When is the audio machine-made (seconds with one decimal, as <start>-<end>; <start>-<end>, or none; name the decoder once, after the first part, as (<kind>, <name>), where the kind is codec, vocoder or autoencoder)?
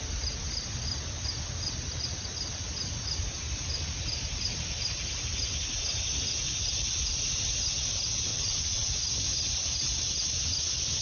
8.3-8.9 (vocoder, WaveNeXt)